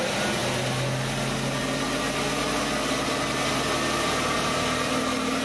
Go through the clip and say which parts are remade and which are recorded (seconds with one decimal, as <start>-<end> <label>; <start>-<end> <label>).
0.0-5.4 recorded